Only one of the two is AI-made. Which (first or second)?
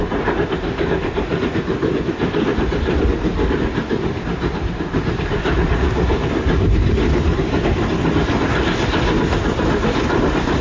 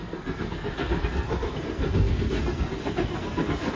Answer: second